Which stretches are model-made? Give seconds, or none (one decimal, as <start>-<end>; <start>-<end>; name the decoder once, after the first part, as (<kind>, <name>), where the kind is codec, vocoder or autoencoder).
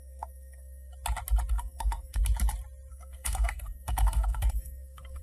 0.0-0.9 (codec, SNAC); 1.5-2.2; 2.9-5.2